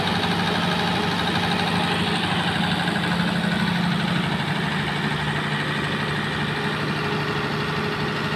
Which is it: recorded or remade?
recorded